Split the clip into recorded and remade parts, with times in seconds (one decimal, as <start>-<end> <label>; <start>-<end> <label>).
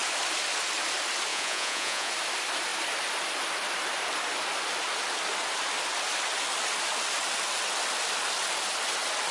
0.0-1.3 recorded; 1.3-2.1 remade; 2.1-9.3 recorded